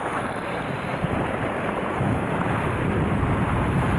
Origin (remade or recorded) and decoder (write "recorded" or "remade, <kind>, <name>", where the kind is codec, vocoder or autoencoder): remade, vocoder, BigVGAN v2